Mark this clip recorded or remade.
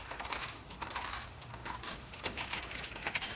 remade